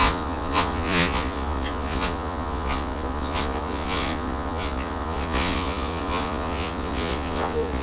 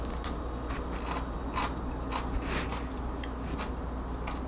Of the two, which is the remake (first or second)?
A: first